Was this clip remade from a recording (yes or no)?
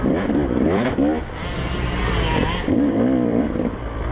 yes